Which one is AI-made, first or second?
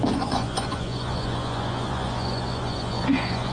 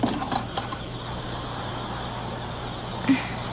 first